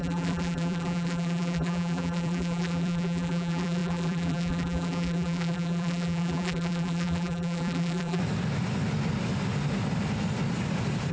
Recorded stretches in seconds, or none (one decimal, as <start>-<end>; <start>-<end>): 8.2-11.1